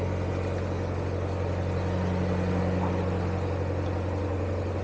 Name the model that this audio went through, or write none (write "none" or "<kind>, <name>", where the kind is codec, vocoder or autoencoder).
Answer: none